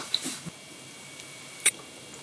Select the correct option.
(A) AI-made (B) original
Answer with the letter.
A